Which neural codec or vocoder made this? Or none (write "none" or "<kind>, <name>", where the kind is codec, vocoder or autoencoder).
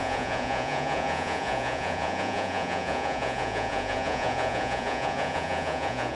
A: vocoder, Vocos